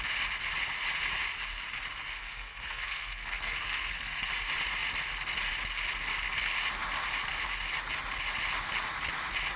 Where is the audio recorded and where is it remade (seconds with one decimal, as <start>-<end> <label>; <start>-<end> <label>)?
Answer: 0.0-2.2 recorded; 2.2-4.3 remade; 4.3-9.6 recorded